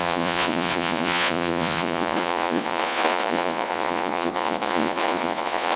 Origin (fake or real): fake